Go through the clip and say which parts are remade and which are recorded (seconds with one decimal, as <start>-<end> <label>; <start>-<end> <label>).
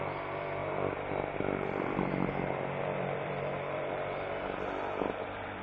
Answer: 0.0-5.6 remade